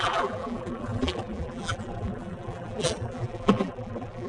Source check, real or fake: fake